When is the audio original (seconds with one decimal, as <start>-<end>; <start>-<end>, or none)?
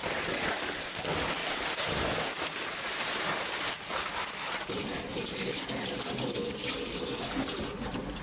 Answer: 0.0-1.4; 6.0-8.2